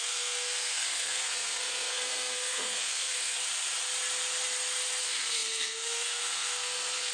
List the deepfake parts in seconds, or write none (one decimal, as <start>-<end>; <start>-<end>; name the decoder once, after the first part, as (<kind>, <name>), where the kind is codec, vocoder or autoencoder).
0.0-3.4 (codec, SNAC); 5.0-7.1